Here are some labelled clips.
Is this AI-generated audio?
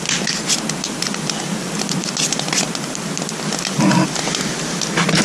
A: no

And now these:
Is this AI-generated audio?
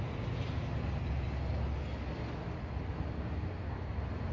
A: no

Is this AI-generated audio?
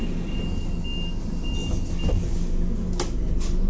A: no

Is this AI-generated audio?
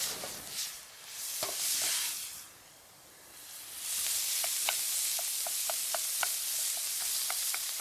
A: no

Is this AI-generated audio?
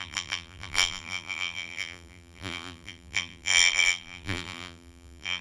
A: yes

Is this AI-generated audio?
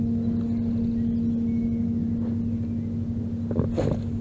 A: no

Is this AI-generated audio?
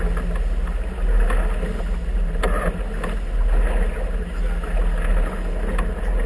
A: no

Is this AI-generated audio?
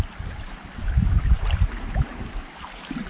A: yes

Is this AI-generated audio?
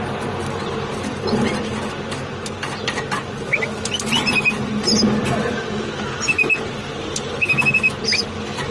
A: no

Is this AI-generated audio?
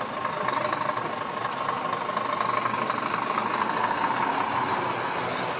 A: no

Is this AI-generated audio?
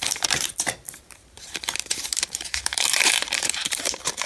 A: yes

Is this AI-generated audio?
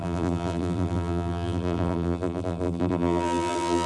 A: yes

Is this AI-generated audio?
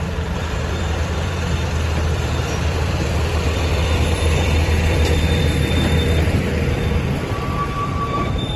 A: yes